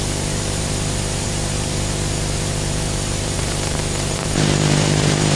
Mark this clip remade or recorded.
remade